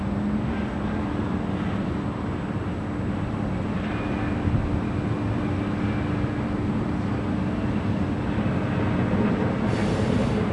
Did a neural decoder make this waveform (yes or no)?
no